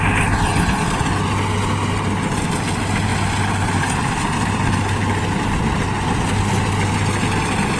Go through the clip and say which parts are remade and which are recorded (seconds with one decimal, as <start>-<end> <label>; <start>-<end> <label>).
0.0-7.8 recorded